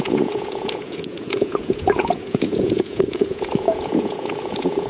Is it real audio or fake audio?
fake